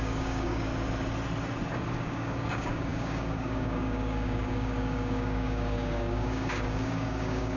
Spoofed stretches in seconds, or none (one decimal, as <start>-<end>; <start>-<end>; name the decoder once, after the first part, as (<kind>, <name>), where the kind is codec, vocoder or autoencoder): 0.0-0.7 (codec, DAC); 2.0-7.6